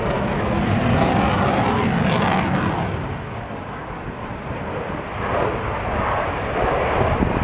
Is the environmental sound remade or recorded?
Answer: recorded